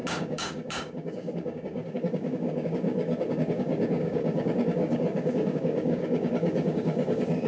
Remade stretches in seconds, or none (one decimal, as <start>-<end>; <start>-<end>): 0.0-7.5